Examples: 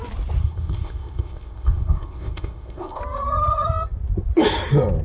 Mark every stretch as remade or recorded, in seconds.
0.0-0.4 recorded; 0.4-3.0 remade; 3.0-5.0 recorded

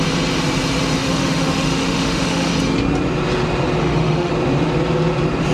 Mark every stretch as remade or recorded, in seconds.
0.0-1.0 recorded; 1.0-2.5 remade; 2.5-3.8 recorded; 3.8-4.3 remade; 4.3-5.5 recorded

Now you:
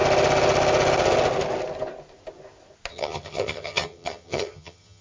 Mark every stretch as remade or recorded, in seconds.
0.0-2.9 recorded; 2.9-5.0 remade

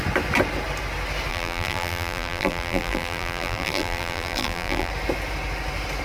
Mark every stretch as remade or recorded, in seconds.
0.0-1.3 recorded; 1.3-4.9 remade; 4.9-6.0 recorded